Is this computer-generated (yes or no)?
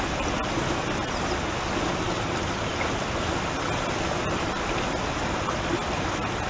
no